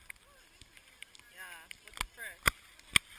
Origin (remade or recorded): recorded